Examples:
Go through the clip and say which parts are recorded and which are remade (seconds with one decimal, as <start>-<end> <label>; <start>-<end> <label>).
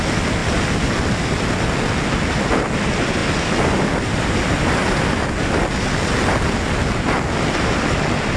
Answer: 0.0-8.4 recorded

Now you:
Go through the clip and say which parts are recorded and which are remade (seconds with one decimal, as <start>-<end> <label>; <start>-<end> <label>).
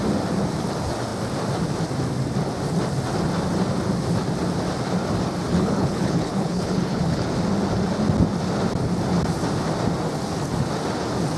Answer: 0.0-5.5 recorded; 5.5-7.3 remade; 7.3-11.4 recorded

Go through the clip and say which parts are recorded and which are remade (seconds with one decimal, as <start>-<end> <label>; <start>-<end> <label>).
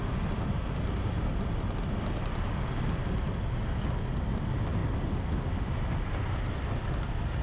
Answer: 0.0-7.4 recorded